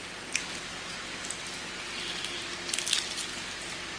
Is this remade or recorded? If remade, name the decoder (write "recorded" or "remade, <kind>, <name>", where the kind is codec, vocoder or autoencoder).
recorded